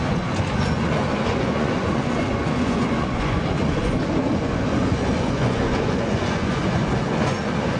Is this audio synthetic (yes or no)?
yes